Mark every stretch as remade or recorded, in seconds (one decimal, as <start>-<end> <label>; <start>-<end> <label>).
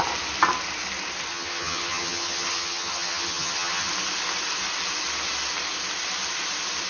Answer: 0.0-1.3 recorded; 1.3-3.9 remade; 3.9-6.9 recorded